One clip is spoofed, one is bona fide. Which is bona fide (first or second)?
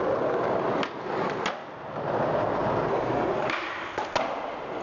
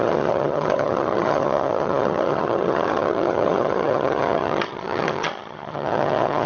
first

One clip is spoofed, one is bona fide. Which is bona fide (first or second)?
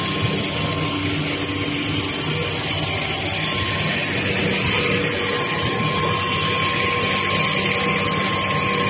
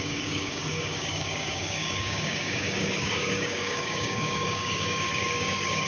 first